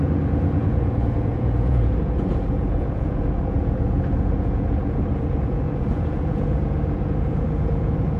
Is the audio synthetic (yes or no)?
yes